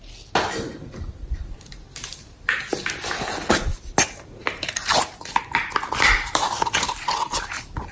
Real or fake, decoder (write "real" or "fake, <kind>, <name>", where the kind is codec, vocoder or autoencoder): real